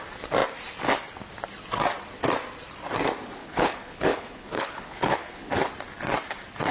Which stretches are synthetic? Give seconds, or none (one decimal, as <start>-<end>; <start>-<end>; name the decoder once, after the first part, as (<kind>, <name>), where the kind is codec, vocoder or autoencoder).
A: 3.4-5.5 (codec, HILCodec)